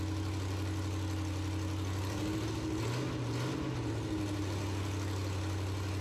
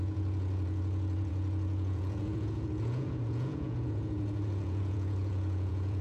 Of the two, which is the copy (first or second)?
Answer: second